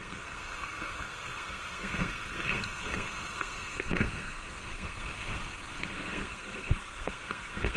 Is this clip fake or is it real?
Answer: fake